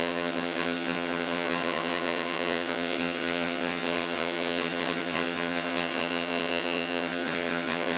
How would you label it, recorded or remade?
remade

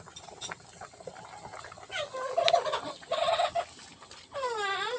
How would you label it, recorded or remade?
recorded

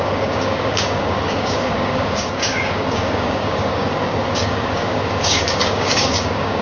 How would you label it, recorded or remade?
remade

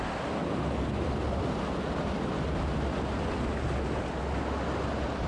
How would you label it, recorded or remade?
recorded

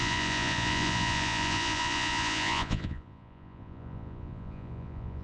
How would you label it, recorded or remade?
remade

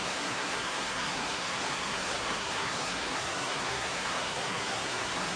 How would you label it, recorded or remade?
remade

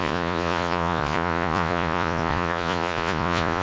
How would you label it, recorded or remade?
remade